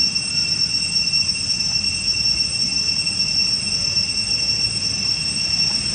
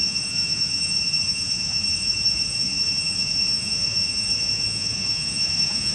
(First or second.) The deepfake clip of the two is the second